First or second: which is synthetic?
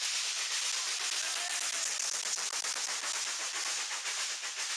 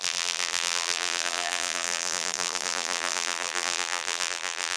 second